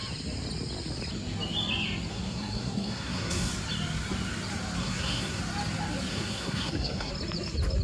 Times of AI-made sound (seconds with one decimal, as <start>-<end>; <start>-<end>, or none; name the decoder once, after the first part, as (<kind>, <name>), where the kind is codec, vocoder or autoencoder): 2.1-3.5 (codec, SNAC); 4.8-5.4; 6.1-7.1